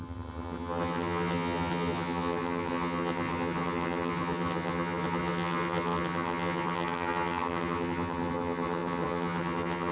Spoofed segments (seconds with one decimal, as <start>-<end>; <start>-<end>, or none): 0.0-9.9